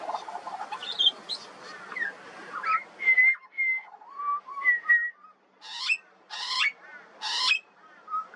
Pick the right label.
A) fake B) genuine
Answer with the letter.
B